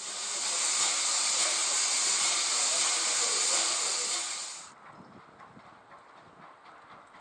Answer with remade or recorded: recorded